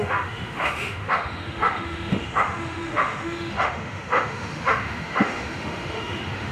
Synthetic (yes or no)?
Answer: yes